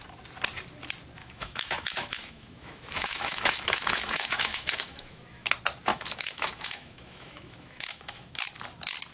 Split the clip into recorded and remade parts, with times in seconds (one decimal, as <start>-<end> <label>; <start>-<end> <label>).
0.0-1.2 recorded; 1.2-5.5 remade; 5.5-5.9 recorded; 5.9-8.4 remade; 8.4-9.1 recorded